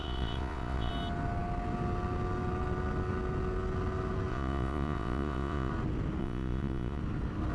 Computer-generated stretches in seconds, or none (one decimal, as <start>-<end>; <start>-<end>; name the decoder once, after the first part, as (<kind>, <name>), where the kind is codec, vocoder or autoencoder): 0.0-0.9 (vocoder, Vocos); 4.3-5.7; 6.2-7.0